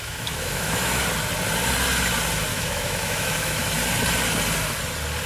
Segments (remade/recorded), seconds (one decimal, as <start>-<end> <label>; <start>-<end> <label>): 0.0-1.0 remade; 1.0-2.5 recorded; 2.5-3.7 remade; 3.7-5.3 recorded

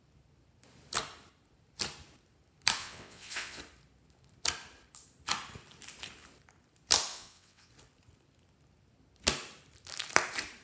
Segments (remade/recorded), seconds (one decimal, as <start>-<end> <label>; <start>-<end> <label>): 0.0-2.8 recorded; 2.8-3.6 remade; 3.6-7.1 recorded; 7.1-7.7 remade; 7.7-10.6 recorded

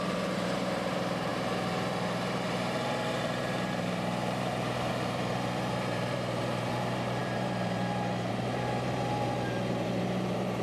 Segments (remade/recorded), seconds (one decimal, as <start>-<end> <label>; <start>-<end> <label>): 0.0-10.6 remade

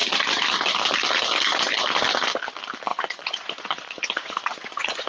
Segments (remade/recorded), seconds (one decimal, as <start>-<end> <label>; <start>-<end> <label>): 0.0-2.9 recorded; 2.9-5.1 remade

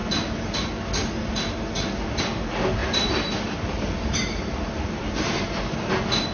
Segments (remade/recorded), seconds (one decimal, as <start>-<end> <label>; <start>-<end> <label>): 0.0-2.8 recorded; 2.8-5.6 remade; 5.6-6.3 recorded

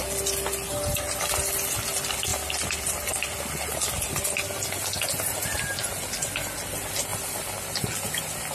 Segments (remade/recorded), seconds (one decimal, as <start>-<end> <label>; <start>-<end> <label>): 0.0-8.5 recorded

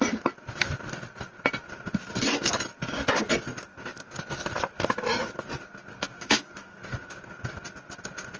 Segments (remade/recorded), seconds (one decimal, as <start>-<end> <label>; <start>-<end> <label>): 0.0-5.9 recorded; 5.9-6.8 remade; 6.8-8.4 recorded